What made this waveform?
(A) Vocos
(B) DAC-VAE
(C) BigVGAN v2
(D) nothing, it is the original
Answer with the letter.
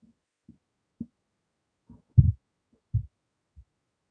B